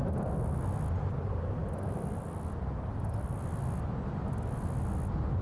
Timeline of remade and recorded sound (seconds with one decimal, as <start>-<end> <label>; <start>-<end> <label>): 0.0-5.4 recorded